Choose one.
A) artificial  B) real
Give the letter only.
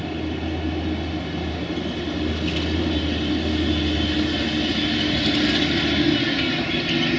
B